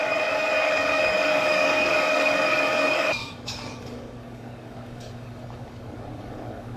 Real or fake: fake